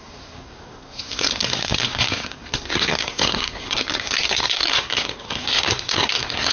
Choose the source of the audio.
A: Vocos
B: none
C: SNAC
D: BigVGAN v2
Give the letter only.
C